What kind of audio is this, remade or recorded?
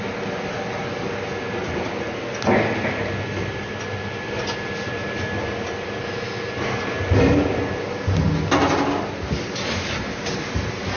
recorded